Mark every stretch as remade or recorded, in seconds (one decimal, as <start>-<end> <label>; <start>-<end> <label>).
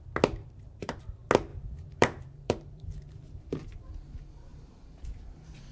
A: 0.0-0.4 recorded; 0.4-1.0 remade; 1.0-1.5 recorded; 1.5-3.9 remade; 3.9-4.5 recorded; 4.5-5.1 remade; 5.1-5.7 recorded